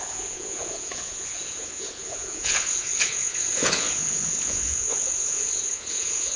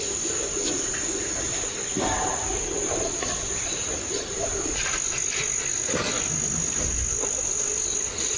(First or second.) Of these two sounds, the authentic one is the second